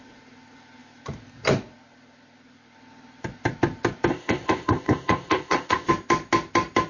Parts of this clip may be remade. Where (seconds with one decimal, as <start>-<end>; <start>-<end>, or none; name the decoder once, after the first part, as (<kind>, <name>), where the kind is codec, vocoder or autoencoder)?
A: 4.1-5.9 (codec, ZipCodec)